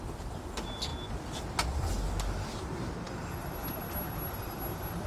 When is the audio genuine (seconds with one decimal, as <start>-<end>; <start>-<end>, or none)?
0.0-5.1